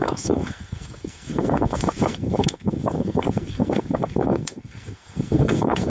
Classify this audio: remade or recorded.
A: remade